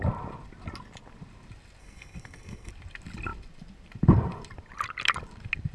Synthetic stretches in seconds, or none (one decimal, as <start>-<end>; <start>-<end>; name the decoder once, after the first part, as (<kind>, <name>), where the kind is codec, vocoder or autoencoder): 1.8-2.7 (codec, SNAC)